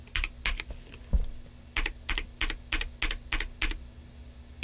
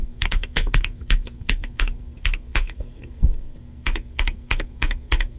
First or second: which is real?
first